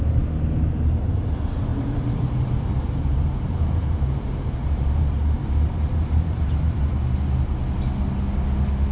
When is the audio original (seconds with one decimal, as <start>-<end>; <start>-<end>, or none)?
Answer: 0.0-1.7; 6.9-8.9